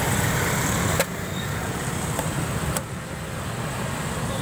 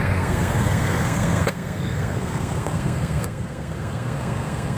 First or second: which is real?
first